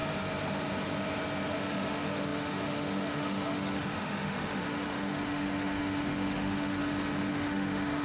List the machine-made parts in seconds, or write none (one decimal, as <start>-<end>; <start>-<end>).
1.5-6.8; 7.3-8.0

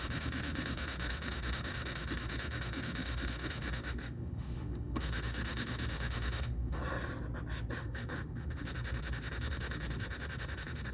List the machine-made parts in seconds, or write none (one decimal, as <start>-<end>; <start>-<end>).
0.0-6.8; 7.8-10.9

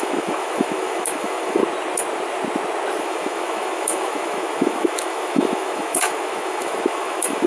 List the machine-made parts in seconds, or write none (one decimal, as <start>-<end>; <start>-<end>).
0.0-1.6; 3.0-7.5

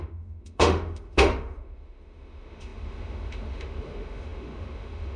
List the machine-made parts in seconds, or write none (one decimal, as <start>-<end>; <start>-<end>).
0.0-5.2

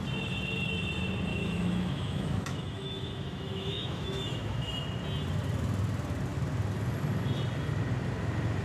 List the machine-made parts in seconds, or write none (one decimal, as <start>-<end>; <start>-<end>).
1.3-4.7

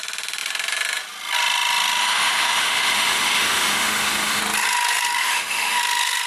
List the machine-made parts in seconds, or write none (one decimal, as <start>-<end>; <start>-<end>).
2.0-4.4; 5.2-5.8

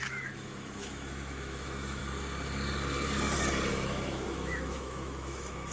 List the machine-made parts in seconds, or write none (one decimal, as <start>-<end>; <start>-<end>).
0.0-2.0; 3.7-5.7